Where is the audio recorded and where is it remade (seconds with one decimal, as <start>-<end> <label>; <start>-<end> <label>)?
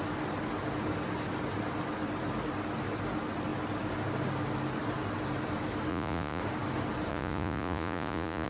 0.0-5.9 recorded; 5.9-6.4 remade; 6.4-7.1 recorded; 7.1-8.5 remade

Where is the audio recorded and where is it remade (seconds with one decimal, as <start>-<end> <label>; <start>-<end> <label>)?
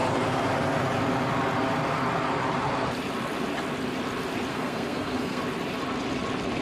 0.0-4.5 recorded; 4.5-5.4 remade; 5.4-6.6 recorded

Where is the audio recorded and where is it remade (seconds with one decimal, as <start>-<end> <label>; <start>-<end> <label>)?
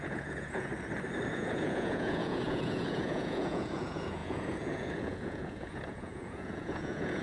0.0-0.7 remade; 0.7-1.3 recorded; 1.3-7.2 remade